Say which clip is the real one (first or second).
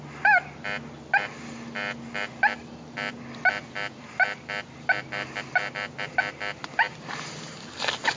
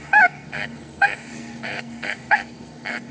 first